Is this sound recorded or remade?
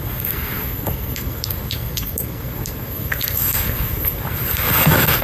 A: remade